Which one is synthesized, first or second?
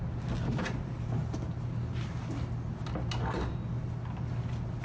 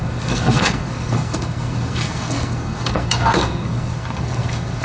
second